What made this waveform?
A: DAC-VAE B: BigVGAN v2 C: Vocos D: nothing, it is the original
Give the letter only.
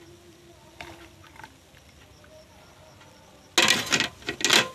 D